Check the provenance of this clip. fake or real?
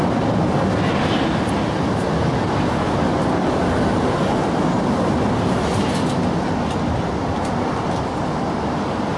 real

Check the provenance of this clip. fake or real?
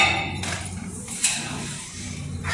real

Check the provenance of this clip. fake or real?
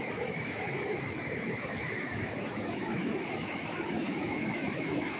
fake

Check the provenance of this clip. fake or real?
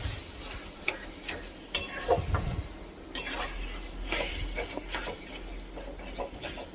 real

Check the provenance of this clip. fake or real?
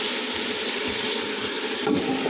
real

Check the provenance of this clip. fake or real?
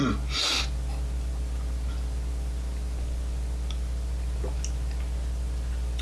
real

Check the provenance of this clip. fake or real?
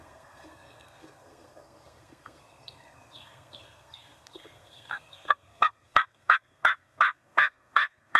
fake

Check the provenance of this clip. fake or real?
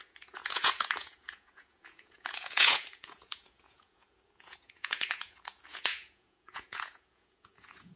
fake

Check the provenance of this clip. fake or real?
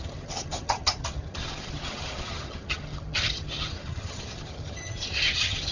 fake